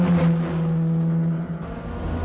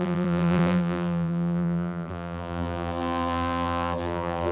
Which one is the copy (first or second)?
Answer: second